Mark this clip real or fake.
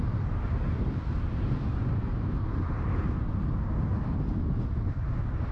real